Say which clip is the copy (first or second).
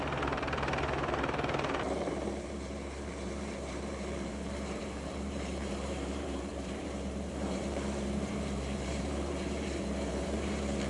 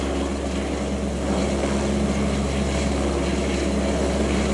first